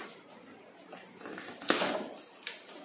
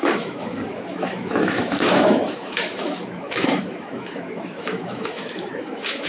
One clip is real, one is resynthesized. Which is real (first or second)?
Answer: first